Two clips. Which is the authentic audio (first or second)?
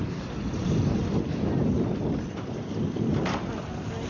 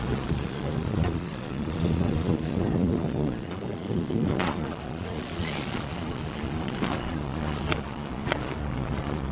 first